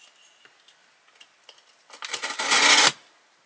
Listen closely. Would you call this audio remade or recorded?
recorded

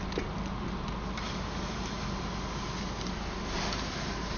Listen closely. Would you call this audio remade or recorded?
recorded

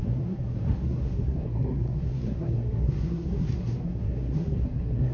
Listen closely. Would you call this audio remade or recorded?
remade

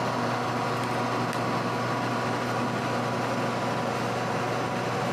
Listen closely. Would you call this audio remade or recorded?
recorded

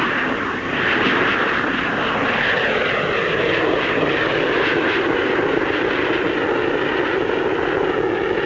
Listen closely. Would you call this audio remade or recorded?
recorded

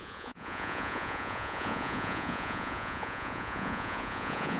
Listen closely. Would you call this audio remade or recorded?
remade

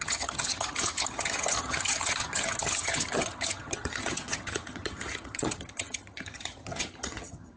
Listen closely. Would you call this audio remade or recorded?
remade